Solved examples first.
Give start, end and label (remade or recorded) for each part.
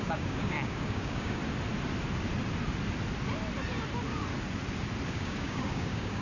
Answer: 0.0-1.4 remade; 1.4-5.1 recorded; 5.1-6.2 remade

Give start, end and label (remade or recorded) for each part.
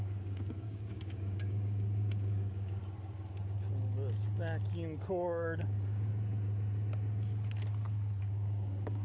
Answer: 0.0-2.8 remade; 2.8-5.1 recorded; 5.1-6.1 remade; 6.1-8.2 recorded; 8.2-9.0 remade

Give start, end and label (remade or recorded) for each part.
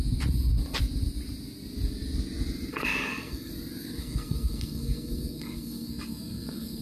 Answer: 0.0-2.7 recorded; 2.7-3.5 remade; 3.5-4.0 recorded; 4.0-6.8 remade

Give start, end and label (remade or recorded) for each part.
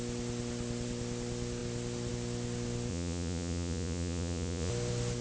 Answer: 0.0-2.9 recorded; 2.9-4.7 remade; 4.7-5.2 recorded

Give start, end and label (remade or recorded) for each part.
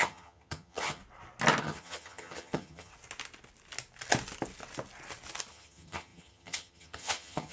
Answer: 0.0-1.0 remade; 1.0-1.6 recorded; 1.6-2.9 remade; 2.9-5.5 recorded; 5.5-7.5 remade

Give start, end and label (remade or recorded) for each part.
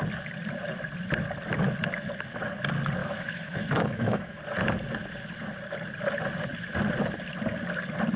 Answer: 0.0-3.0 recorded; 3.0-4.4 remade; 4.4-8.2 recorded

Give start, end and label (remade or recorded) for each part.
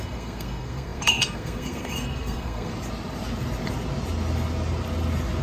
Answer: 0.0-2.7 remade; 2.7-5.4 recorded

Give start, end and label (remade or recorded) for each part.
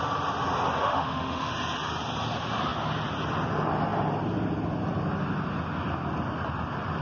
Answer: 0.0-0.8 recorded; 0.8-1.5 remade; 1.5-7.0 recorded